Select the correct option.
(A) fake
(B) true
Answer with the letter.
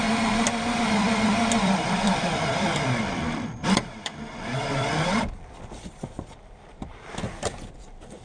A